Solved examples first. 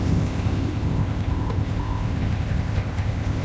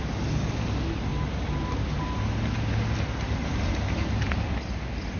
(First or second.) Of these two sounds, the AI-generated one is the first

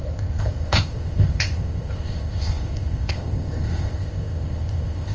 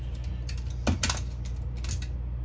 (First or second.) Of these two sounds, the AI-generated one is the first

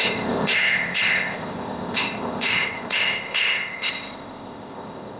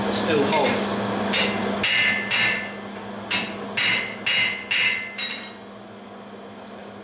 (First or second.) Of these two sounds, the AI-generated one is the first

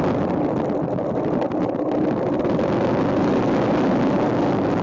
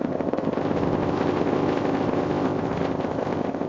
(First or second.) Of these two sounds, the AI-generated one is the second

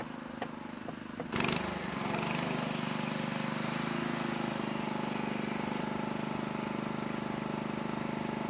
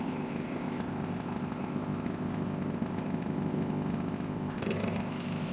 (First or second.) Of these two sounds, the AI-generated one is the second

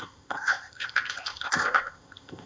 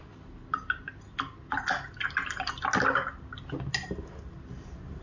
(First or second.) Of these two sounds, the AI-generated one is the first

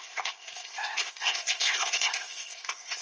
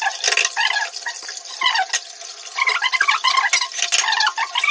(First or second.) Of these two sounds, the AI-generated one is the first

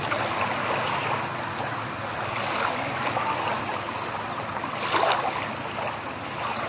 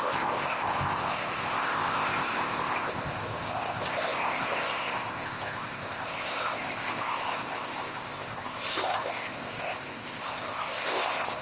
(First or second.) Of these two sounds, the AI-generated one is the second